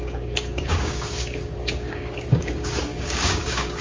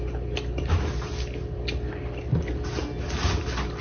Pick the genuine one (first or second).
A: second